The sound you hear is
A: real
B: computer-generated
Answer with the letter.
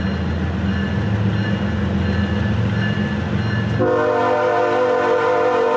A